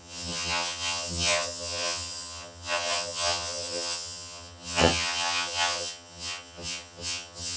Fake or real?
fake